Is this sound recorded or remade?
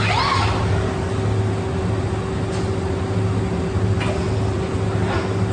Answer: recorded